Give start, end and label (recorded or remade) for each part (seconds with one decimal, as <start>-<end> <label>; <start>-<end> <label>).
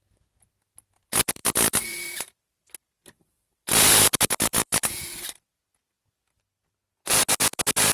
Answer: 0.0-1.4 recorded; 1.4-5.6 remade; 5.6-7.9 recorded